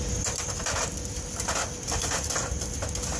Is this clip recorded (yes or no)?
yes